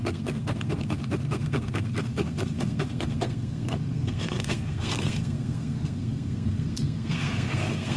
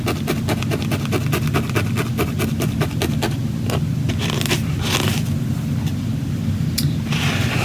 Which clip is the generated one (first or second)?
first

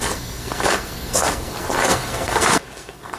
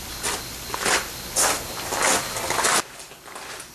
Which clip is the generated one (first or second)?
first